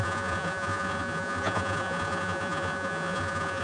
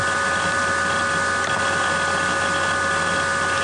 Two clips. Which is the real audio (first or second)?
second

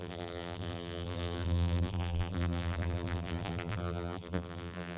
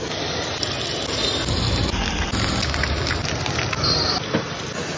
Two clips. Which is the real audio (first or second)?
second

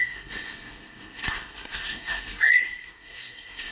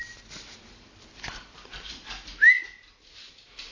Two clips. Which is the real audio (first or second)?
second